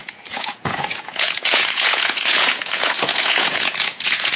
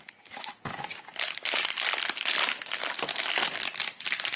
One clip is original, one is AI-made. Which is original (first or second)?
second